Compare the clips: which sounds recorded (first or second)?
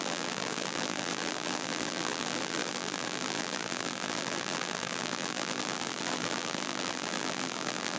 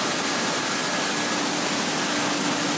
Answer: second